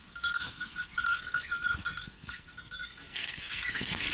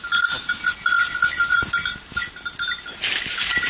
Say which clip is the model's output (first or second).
first